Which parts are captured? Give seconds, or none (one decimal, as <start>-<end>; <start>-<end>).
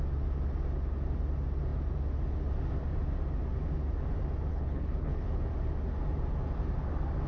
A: 0.0-4.5; 5.4-7.3